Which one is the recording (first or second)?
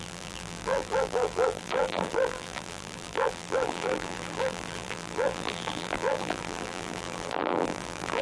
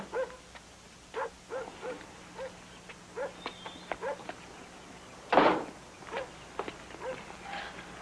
second